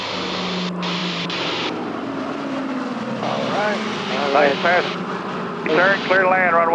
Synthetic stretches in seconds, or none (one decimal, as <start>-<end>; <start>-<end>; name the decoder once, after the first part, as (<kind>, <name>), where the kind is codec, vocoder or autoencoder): 1.0-3.7 (vocoder, BigVGAN v2); 4.5-5.7